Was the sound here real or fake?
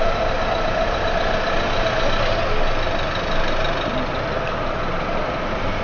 real